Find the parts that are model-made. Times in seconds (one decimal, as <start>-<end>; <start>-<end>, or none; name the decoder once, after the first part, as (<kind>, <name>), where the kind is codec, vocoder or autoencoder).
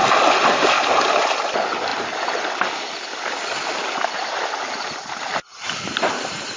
none